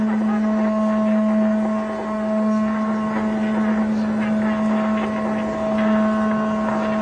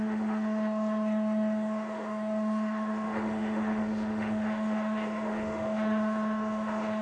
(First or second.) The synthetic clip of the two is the second